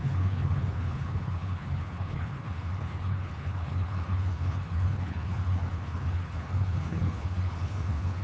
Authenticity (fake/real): fake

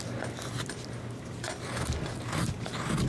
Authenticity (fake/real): real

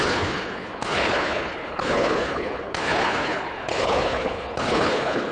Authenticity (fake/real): fake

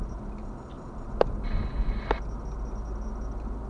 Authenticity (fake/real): real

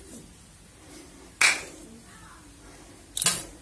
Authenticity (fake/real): real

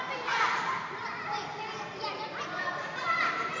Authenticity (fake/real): real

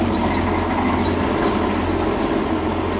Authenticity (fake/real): real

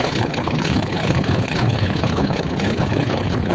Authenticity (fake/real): fake